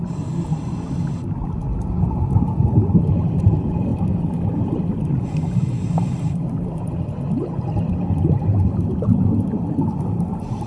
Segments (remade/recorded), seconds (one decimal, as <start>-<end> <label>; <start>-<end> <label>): 0.0-10.7 recorded